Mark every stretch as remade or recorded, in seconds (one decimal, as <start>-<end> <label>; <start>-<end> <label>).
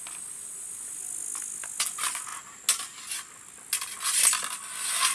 0.0-5.1 recorded